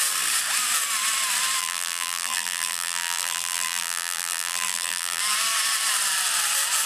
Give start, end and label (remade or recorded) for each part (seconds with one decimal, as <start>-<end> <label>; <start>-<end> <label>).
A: 0.0-1.6 recorded; 1.6-5.2 remade; 5.2-6.9 recorded